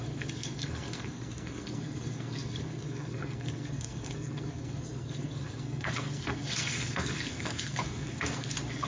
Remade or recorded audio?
remade